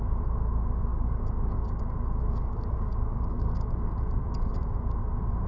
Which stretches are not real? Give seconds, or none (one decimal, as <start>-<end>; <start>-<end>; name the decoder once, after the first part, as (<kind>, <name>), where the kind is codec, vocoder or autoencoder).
0.9-1.8 (codec, DAC); 2.4-3.7